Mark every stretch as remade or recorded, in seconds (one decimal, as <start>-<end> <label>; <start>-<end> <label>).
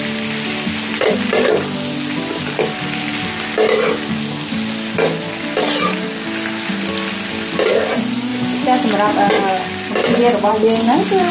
0.0-11.3 recorded